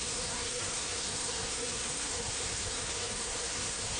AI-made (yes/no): yes